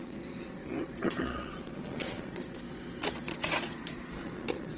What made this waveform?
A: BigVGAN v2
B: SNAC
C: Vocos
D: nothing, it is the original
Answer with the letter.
C